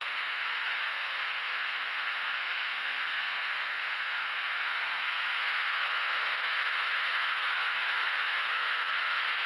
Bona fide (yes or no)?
no